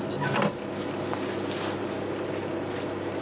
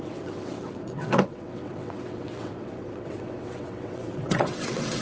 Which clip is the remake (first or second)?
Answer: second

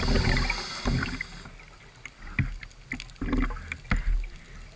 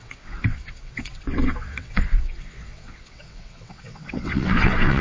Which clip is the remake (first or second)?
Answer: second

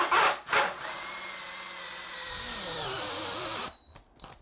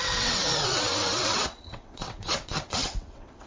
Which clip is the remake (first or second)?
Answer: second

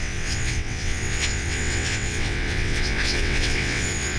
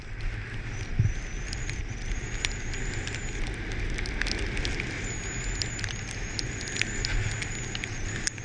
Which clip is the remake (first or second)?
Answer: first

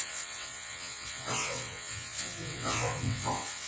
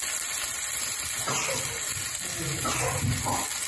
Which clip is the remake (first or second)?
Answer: first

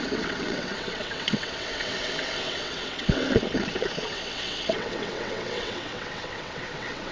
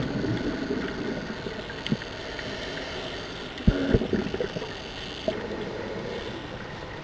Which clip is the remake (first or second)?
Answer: first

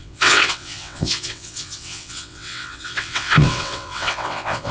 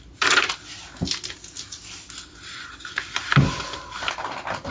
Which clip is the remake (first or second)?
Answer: first